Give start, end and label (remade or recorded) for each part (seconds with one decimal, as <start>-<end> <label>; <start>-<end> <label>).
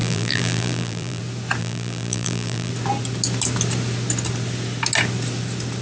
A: 0.0-1.2 remade; 1.2-1.6 recorded; 1.6-2.7 remade; 2.7-5.8 recorded